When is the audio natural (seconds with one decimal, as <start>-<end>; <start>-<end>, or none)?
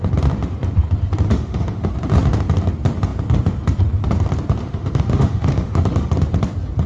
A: 0.0-1.3; 1.9-4.6; 6.1-6.9